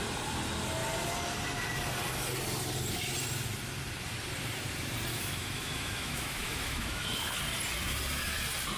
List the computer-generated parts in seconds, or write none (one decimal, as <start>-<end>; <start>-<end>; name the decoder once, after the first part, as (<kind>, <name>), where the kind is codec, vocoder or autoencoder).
5.1-7.4 (autoencoder, DAC-VAE)